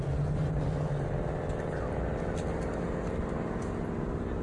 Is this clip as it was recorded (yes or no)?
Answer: yes